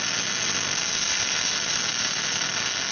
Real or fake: real